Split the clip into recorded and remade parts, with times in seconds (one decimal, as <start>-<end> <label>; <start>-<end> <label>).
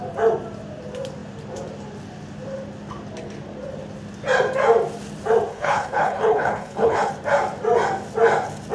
0.0-5.5 recorded; 5.5-7.1 remade; 7.1-8.7 recorded